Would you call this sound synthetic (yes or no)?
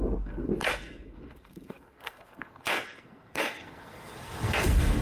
yes